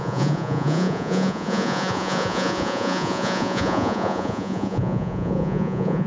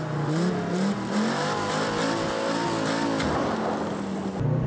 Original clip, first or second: second